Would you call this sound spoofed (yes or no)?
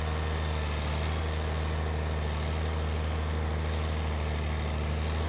no